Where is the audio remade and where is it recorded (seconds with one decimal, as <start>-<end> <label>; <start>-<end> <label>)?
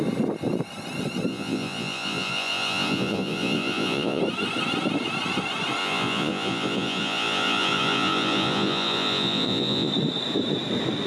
0.0-1.3 recorded; 1.3-4.2 remade; 4.2-5.8 recorded; 5.8-9.9 remade; 9.9-11.1 recorded